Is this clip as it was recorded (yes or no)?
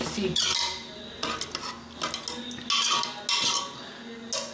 yes